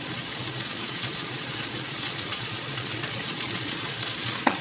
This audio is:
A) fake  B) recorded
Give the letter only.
A